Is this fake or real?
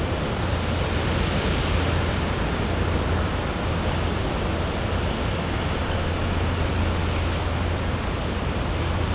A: real